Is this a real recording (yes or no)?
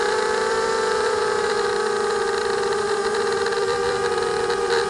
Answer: no